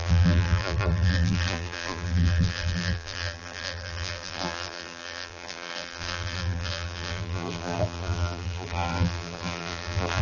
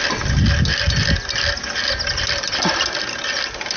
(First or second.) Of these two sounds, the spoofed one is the first